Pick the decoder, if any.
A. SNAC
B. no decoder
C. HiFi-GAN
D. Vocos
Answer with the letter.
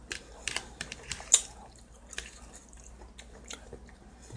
B